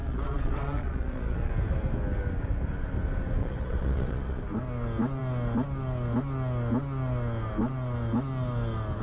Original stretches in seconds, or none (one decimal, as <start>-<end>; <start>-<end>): 1.5-3.4; 4.4-9.0